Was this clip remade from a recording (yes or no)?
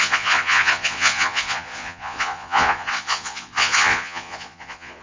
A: yes